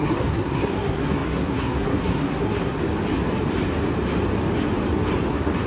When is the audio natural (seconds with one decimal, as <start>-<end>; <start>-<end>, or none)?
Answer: 2.8-5.3